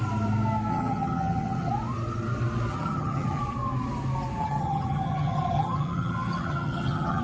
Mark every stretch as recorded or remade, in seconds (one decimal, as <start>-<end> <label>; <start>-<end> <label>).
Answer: 0.0-0.7 recorded; 0.7-1.7 remade; 1.7-2.7 recorded; 2.7-3.4 remade; 3.4-4.4 recorded; 4.4-7.2 remade